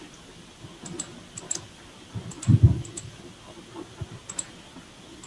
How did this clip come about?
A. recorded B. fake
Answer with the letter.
A